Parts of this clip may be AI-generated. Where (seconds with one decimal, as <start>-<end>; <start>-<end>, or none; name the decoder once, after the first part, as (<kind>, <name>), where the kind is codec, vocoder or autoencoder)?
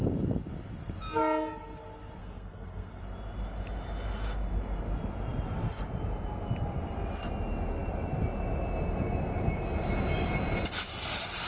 2.2-3.0 (codec, SNAC)